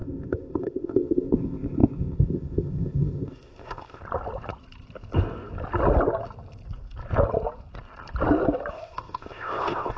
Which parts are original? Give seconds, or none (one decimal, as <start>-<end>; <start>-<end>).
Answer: 4.0-8.7